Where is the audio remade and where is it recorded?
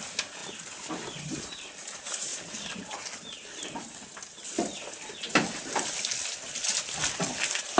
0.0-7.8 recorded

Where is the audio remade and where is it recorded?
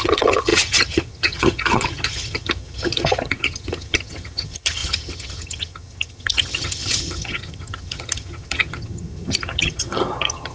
0.0-10.5 remade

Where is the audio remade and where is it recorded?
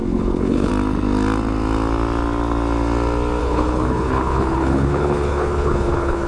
0.0-0.7 remade; 0.7-3.4 recorded; 3.4-6.3 remade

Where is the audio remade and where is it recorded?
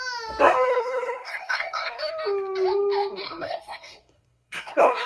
0.0-0.4 recorded; 0.4-2.1 remade; 2.1-3.2 recorded; 3.2-5.1 remade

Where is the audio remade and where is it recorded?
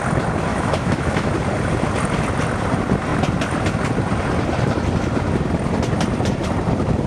0.0-0.5 recorded; 0.5-1.3 remade; 1.3-7.1 recorded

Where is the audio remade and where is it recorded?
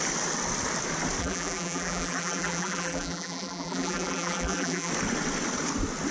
0.0-1.2 recorded; 1.2-4.9 remade; 4.9-6.1 recorded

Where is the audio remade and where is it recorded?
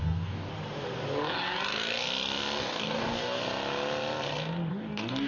0.0-0.5 remade; 0.5-2.6 recorded; 2.6-3.4 remade; 3.4-4.7 recorded; 4.7-5.3 remade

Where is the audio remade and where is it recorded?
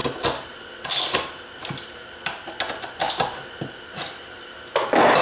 0.0-5.2 recorded